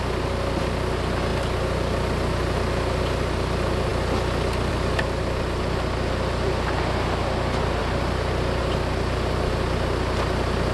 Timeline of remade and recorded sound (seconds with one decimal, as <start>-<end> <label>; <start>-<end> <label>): 0.0-7.8 recorded; 7.8-8.6 remade; 8.6-10.7 recorded